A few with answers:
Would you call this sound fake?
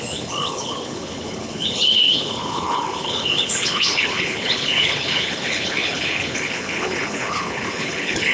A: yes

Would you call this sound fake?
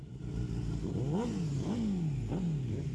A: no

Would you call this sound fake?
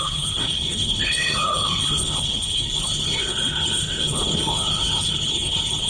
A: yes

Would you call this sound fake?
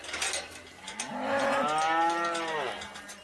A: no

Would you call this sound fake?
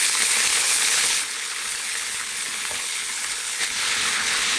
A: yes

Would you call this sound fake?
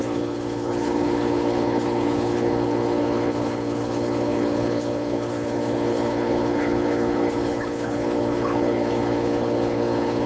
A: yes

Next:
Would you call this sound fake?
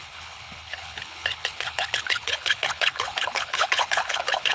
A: yes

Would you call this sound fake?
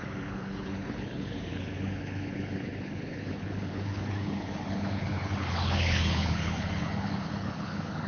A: yes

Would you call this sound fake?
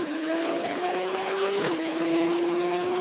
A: yes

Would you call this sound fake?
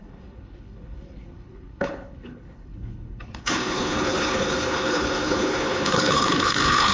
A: yes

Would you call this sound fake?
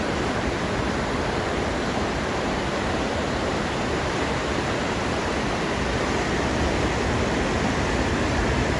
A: no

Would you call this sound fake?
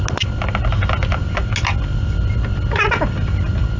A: no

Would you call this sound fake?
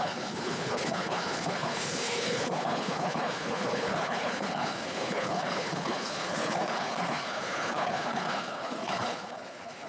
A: yes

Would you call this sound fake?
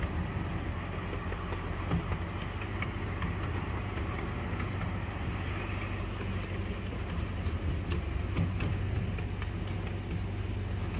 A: no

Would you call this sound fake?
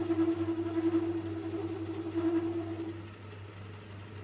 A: no